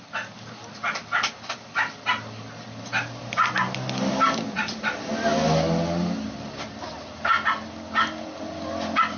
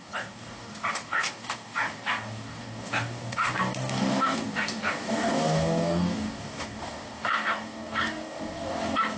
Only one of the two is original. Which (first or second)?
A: first